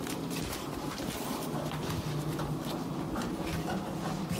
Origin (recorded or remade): recorded